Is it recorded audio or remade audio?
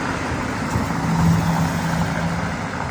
recorded